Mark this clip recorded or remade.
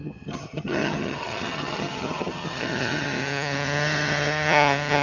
remade